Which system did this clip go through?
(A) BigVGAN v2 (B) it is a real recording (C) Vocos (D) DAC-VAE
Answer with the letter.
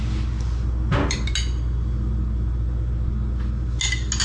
B